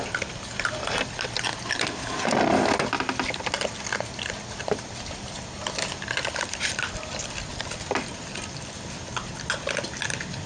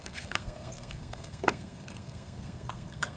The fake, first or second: second